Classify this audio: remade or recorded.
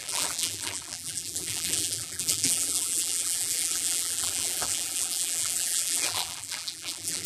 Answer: remade